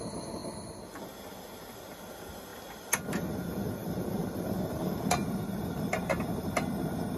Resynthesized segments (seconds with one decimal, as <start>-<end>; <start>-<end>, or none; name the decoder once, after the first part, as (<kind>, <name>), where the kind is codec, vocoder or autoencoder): none